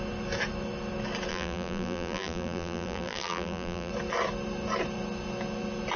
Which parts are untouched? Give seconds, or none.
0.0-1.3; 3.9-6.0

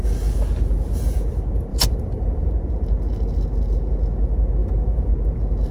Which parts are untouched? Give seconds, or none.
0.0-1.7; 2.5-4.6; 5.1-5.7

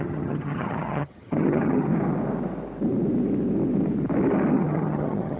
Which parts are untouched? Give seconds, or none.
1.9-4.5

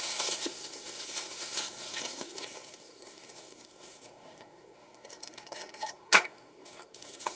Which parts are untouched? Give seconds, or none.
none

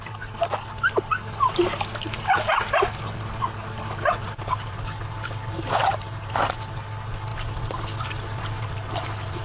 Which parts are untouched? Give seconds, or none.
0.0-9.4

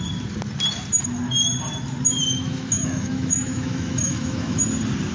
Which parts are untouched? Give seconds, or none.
0.0-2.4; 4.6-5.1

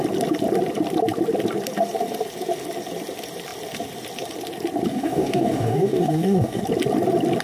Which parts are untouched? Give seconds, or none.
0.0-4.9; 6.6-7.4

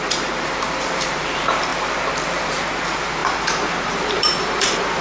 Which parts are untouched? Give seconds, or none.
1.7-2.8